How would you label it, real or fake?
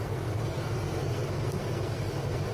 fake